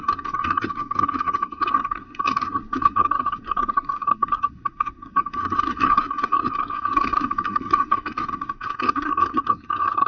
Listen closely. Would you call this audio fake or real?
fake